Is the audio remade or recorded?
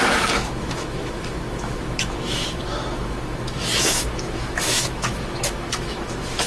remade